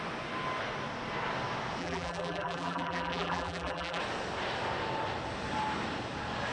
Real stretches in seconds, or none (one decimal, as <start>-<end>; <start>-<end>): 0.0-1.8; 4.0-6.5